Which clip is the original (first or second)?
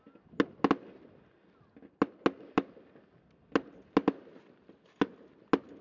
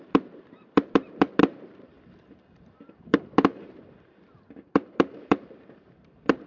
first